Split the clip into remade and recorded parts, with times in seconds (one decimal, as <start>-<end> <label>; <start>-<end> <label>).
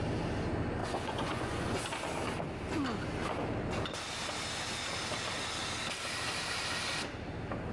0.0-0.8 recorded; 0.8-1.8 remade; 1.8-7.7 recorded